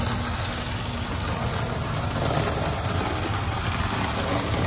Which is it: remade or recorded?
recorded